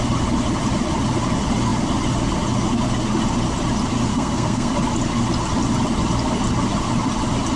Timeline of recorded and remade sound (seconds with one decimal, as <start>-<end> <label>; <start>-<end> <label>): 0.0-4.1 recorded; 4.1-4.7 remade; 4.7-7.6 recorded